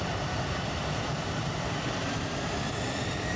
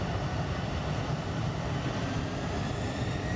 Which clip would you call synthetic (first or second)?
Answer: first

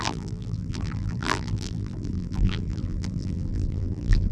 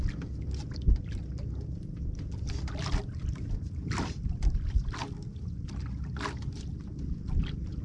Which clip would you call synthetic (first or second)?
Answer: first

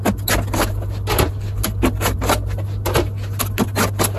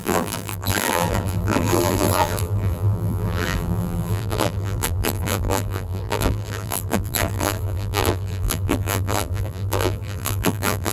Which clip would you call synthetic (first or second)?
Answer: second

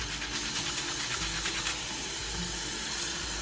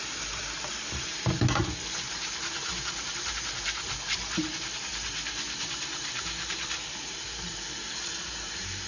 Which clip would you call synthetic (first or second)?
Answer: second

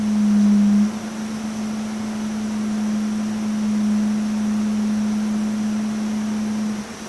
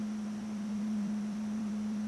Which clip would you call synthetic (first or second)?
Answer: second